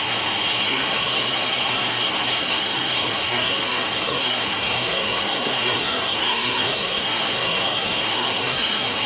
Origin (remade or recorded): remade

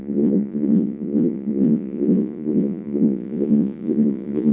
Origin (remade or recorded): remade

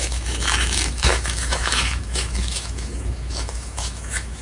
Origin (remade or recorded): remade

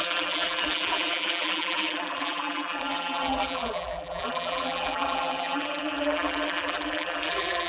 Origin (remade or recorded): remade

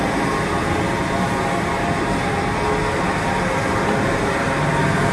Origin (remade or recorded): recorded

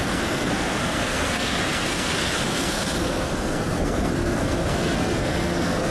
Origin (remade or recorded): remade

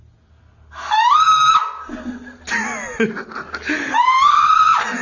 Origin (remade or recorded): recorded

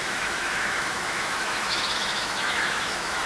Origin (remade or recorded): remade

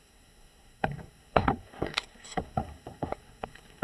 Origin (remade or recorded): remade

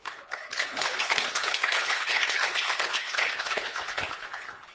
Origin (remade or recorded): remade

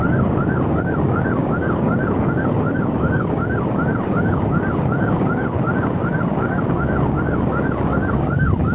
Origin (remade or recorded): remade